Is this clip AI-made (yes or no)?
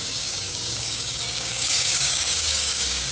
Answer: yes